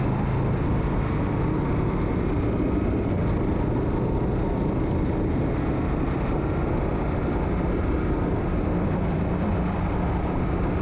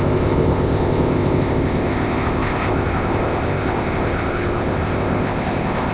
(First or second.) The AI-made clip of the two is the second